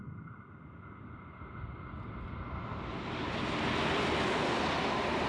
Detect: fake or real real